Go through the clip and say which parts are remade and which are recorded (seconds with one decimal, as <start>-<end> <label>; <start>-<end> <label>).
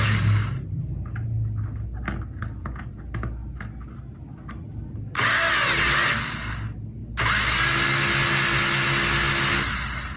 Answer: 0.0-10.2 recorded